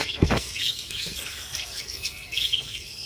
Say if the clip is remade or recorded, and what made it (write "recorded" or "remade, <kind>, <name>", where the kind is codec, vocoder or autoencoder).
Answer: remade, codec, SNAC